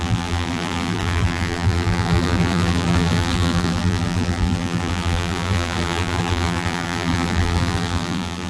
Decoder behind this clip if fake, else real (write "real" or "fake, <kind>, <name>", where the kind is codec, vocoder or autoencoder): fake, vocoder, BigVGAN v2